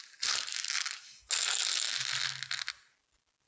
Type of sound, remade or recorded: recorded